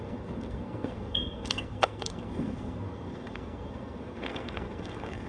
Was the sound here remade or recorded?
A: remade